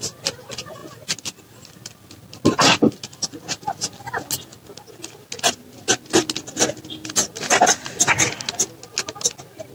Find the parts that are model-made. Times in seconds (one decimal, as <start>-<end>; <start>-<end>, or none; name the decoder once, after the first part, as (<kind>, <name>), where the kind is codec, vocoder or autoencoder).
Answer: none